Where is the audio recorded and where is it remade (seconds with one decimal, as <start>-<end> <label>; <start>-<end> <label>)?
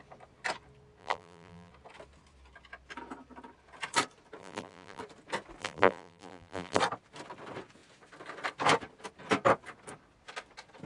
0.0-1.0 recorded; 1.0-1.7 remade; 1.7-4.4 recorded; 4.4-5.0 remade; 5.0-5.6 recorded; 5.6-6.8 remade; 6.8-10.9 recorded